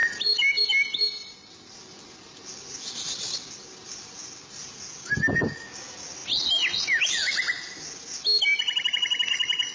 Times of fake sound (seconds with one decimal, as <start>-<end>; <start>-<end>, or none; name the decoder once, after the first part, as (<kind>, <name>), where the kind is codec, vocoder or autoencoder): none